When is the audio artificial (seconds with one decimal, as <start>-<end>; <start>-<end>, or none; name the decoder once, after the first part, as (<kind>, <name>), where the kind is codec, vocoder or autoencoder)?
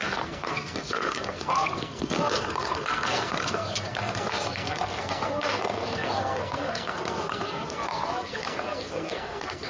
0.0-9.7 (codec, SNAC)